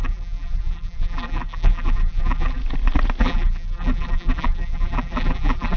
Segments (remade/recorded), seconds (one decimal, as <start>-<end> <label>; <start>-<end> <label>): 0.0-2.6 remade; 2.6-3.2 recorded; 3.2-5.8 remade